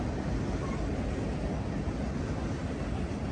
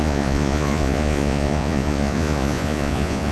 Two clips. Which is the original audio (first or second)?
first